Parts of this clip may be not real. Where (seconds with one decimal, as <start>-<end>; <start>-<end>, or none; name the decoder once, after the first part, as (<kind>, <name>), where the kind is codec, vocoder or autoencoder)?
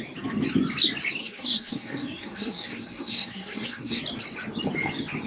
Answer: 1.2-4.0 (codec, SNAC)